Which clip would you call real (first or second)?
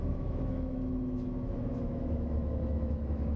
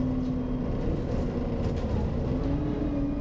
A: second